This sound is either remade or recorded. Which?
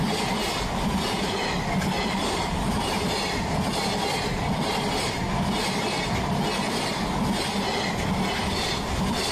recorded